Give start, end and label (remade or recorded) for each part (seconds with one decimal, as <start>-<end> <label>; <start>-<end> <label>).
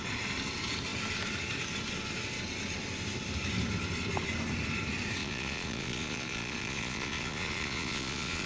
0.0-5.2 recorded; 5.2-8.5 remade